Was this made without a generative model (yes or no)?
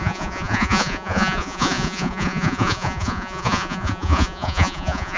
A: no